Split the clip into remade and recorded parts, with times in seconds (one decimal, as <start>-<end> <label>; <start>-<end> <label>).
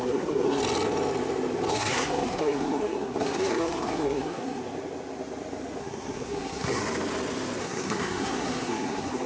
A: 0.0-0.6 remade; 0.6-1.7 recorded; 1.7-4.6 remade; 4.6-5.8 recorded; 5.8-6.8 remade; 6.8-7.6 recorded; 7.6-9.3 remade